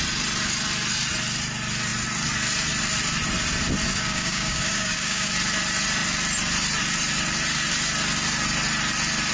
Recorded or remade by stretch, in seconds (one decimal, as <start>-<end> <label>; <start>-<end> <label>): 0.0-3.9 recorded; 3.9-5.3 remade; 5.3-9.3 recorded